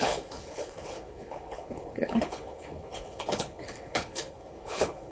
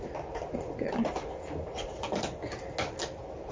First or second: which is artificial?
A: first